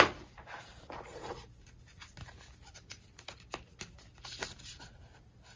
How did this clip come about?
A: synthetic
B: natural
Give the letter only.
B